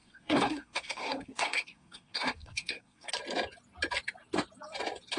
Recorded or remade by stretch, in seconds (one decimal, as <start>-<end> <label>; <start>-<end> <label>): 0.0-3.1 remade; 3.1-5.2 recorded